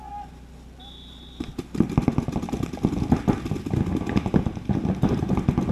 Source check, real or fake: real